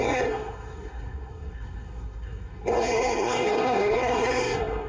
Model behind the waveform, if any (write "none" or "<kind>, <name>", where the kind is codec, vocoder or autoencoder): codec, SNAC